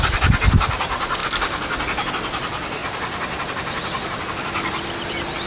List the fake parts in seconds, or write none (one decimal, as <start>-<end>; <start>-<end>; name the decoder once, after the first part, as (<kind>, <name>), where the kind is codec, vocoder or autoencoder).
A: 2.8-3.4 (vocoder, BigVGAN v2)